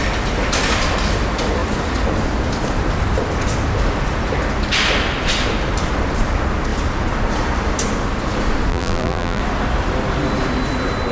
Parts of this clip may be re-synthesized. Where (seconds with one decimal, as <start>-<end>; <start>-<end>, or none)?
8.7-9.4